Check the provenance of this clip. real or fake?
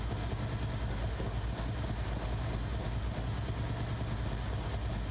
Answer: real